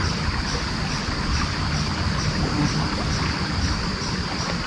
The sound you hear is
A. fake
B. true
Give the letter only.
B